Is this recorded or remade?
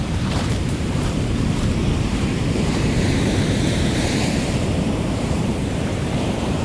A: remade